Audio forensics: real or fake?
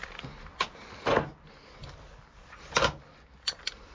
real